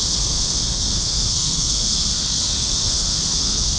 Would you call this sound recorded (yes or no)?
no